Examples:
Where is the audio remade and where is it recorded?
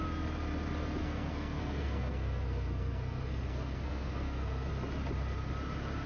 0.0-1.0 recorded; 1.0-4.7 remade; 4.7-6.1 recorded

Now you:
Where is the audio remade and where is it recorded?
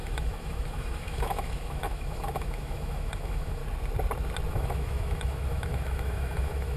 0.0-3.6 remade; 3.6-4.5 recorded; 4.5-6.8 remade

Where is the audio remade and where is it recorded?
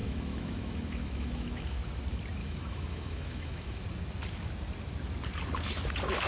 0.0-1.8 remade; 1.8-2.4 recorded; 2.4-3.8 remade; 3.8-6.3 recorded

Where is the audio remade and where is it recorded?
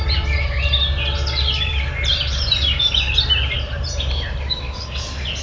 0.0-1.7 recorded; 1.7-4.9 remade; 4.9-5.4 recorded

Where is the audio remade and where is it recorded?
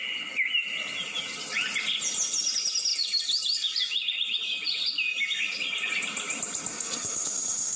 0.0-6.7 recorded; 6.7-7.8 remade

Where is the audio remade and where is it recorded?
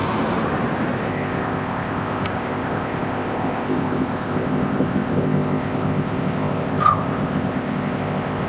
0.0-1.0 recorded; 1.0-8.5 remade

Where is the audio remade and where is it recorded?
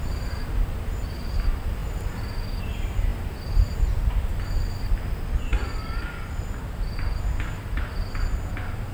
0.0-8.9 recorded